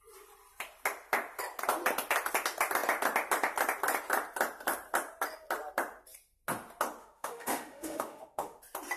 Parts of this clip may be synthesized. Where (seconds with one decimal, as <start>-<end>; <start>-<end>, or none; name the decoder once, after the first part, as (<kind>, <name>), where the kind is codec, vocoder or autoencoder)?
7.0-8.6 (autoencoder, DAC-VAE)